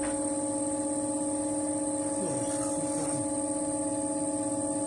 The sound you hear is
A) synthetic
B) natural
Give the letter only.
B